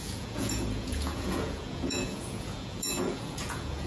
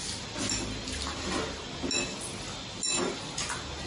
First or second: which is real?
second